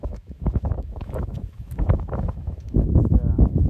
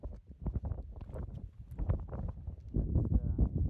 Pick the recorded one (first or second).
second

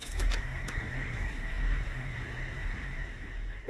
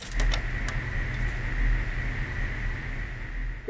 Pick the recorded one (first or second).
second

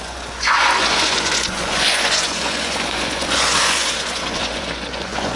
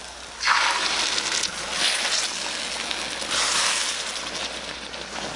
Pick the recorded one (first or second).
second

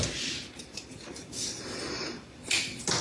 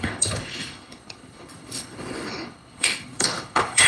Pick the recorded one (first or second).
first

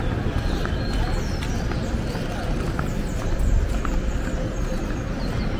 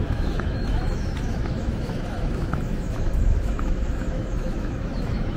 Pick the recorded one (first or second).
first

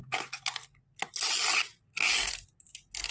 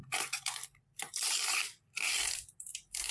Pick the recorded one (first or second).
first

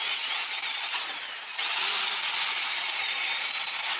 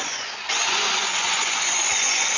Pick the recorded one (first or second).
first